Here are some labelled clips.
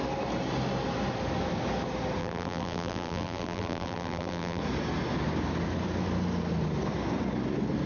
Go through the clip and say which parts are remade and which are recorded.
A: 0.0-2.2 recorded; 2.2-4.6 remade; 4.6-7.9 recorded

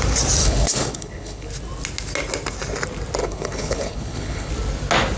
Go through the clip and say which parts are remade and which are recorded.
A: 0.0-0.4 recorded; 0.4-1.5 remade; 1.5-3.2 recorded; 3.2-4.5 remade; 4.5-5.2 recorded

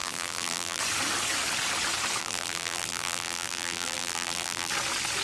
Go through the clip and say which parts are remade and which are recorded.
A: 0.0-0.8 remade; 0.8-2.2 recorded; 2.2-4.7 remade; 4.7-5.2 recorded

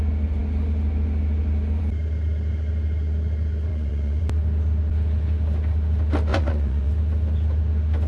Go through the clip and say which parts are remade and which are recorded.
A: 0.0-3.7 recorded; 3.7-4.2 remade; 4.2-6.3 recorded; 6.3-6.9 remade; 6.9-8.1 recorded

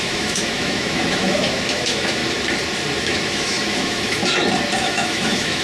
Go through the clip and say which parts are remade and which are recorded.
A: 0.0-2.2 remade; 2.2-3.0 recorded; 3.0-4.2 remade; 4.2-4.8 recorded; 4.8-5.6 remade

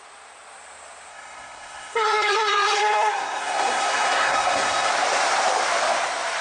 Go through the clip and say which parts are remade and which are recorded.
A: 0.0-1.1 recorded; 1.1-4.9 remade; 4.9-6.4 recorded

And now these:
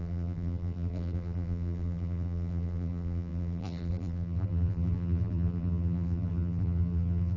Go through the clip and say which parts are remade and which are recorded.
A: 0.0-7.4 remade

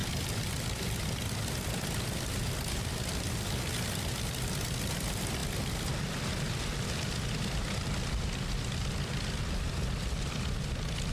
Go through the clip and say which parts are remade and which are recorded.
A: 0.0-11.1 recorded